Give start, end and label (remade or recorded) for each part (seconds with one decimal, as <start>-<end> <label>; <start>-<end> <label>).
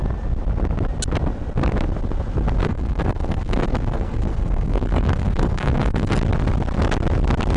0.0-2.6 recorded; 2.6-6.1 remade; 6.1-7.6 recorded